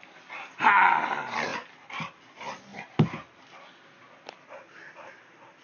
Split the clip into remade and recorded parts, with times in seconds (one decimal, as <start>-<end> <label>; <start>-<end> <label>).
0.0-5.6 recorded